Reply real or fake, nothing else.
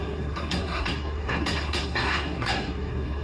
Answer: fake